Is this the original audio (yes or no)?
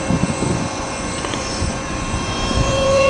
no